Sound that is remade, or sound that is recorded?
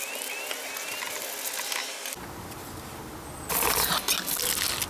recorded